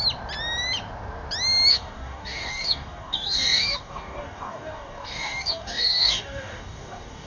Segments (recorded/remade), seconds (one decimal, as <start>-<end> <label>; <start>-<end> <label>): 0.0-1.7 recorded; 1.7-7.3 remade

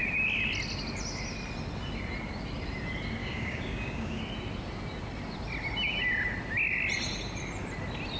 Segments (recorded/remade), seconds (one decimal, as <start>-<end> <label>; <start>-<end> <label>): 0.0-3.2 recorded; 3.2-4.2 remade; 4.2-8.2 recorded

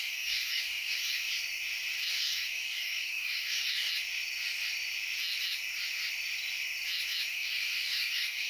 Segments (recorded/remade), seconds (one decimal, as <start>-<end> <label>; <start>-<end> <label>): 0.0-1.3 remade; 1.3-2.1 recorded; 2.1-3.9 remade; 3.9-7.3 recorded; 7.3-8.5 remade

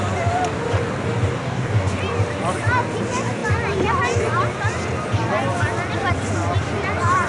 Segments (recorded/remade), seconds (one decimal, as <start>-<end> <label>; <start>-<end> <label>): 0.0-1.4 recorded; 1.4-2.0 remade; 2.0-7.3 recorded